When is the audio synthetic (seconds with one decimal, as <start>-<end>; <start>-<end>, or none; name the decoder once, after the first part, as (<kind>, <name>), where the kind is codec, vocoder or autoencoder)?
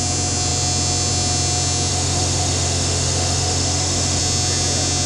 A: 1.9-4.2 (autoencoder, DAC-VAE)